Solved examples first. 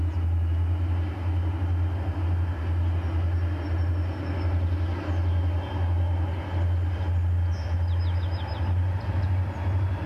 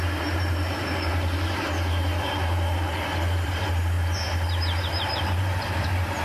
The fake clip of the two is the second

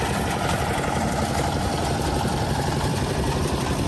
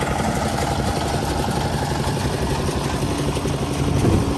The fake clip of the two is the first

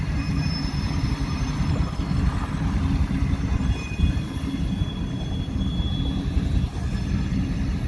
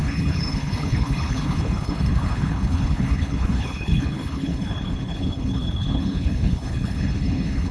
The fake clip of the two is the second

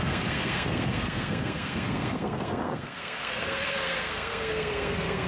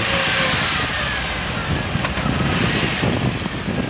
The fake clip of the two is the first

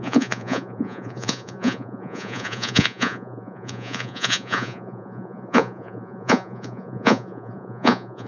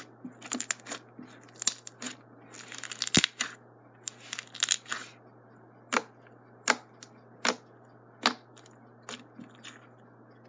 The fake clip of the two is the first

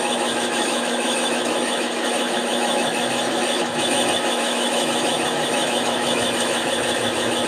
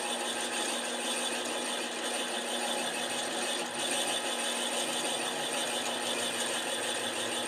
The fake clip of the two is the first